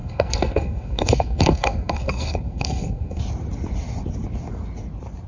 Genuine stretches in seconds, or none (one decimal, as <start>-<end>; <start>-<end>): 3.2-5.3